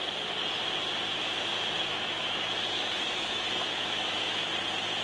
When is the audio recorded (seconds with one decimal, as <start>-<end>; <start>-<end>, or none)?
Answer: 0.0-1.5; 4.5-5.0